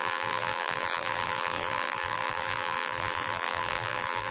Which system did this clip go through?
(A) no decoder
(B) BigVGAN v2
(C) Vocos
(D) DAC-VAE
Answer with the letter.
B